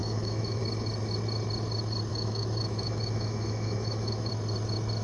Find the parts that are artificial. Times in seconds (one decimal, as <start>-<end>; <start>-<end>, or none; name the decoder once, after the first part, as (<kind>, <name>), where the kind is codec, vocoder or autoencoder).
0.0-0.6 (autoencoder, DAC-VAE); 2.1-4.3